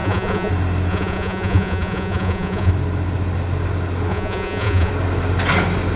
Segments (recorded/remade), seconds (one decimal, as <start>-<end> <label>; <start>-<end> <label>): 0.0-0.5 remade; 0.5-0.9 recorded; 0.9-2.7 remade; 2.7-4.1 recorded; 4.1-4.9 remade; 4.9-6.0 recorded

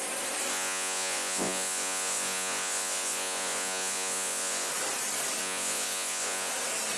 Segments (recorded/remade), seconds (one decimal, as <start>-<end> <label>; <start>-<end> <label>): 0.0-0.5 recorded; 0.5-4.7 remade; 4.7-5.4 recorded; 5.4-6.5 remade; 6.5-7.0 recorded